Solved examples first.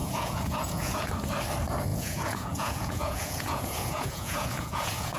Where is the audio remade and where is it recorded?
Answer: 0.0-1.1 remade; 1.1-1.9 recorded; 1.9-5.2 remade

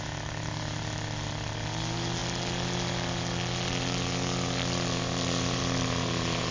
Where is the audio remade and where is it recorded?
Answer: 0.0-6.5 recorded

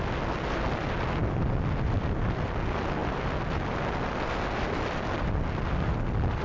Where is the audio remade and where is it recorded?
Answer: 0.0-6.4 recorded

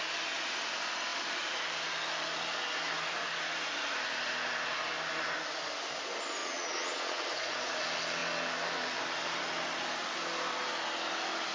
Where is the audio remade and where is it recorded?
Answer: 0.0-6.4 recorded; 6.4-7.7 remade; 7.7-11.5 recorded

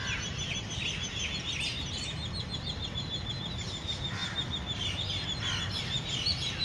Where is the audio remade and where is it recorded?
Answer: 0.0-6.6 recorded